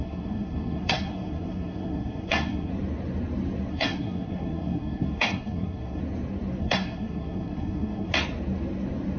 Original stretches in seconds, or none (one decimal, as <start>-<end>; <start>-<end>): 2.7-3.7; 6.0-6.6; 8.1-9.2